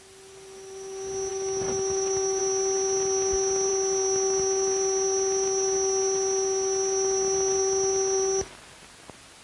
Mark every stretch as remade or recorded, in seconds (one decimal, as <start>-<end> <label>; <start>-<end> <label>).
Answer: 0.0-1.3 recorded; 1.3-2.4 remade; 2.4-9.4 recorded